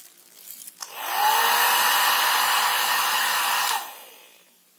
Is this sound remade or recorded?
recorded